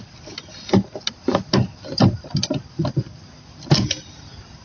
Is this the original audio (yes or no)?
yes